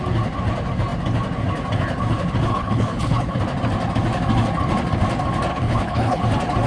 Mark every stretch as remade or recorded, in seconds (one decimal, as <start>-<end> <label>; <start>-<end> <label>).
0.0-2.5 recorded; 2.5-3.4 remade; 3.4-5.5 recorded; 5.5-6.2 remade; 6.2-6.7 recorded